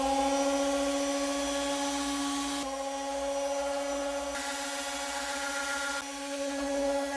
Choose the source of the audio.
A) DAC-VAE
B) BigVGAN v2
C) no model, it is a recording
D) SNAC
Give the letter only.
C